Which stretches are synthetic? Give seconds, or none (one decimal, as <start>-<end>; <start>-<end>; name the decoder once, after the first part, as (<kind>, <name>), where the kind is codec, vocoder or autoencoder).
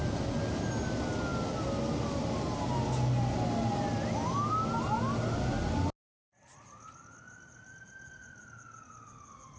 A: none